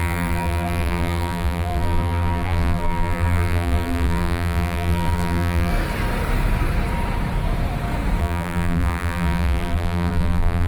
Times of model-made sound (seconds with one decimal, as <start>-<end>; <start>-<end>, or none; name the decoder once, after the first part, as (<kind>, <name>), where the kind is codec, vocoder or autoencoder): 0.0-5.7 (vocoder, BigVGAN v2); 8.2-10.7